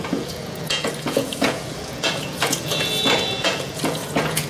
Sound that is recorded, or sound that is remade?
remade